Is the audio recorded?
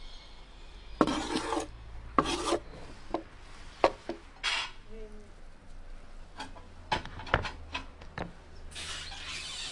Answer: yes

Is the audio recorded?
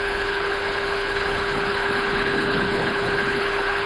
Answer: no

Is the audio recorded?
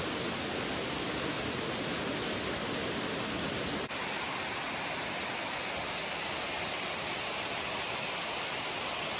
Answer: yes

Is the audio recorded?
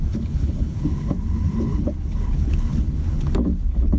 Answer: no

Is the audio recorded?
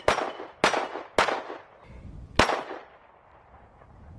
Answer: yes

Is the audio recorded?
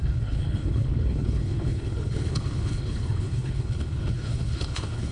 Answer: no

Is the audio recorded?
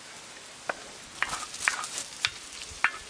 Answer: yes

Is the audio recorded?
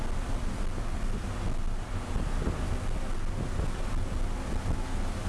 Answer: yes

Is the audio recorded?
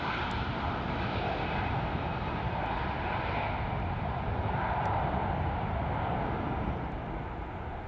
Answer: yes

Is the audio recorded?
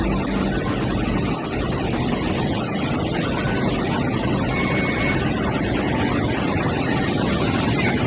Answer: yes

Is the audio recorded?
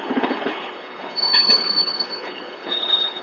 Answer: no